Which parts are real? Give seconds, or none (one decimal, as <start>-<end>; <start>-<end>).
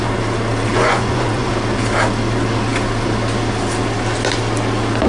0.0-0.7; 1.5-5.1